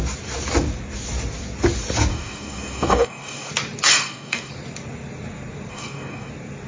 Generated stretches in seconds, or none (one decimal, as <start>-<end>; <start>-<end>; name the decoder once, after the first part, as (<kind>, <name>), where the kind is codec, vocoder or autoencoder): 2.1-3.5 (codec, DAC); 3.9-4.5; 5.7-6.3

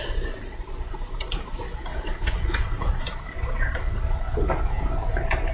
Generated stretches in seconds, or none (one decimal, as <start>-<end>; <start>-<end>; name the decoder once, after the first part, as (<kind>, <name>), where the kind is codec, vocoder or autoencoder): 1.9-3.1 (vocoder, Vocos)

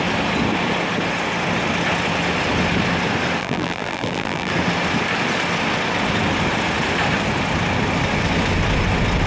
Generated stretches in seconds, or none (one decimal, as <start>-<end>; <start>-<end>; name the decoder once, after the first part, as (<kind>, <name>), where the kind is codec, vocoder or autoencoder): 3.4-4.5 (vocoder, BigVGAN v2)

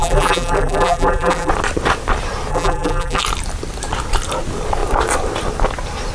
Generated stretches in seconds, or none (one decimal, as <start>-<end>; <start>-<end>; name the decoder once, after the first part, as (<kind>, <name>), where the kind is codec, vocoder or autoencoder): 0.0-1.5 (vocoder, BigVGAN v2); 2.5-3.2